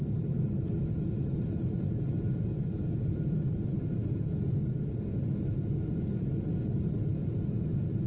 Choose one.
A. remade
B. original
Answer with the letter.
B